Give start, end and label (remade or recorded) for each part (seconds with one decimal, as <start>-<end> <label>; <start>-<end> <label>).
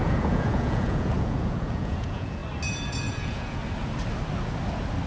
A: 0.0-2.4 remade; 2.4-2.9 recorded; 2.9-3.6 remade; 3.6-5.1 recorded